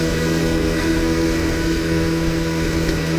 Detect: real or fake fake